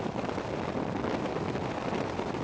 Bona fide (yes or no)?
yes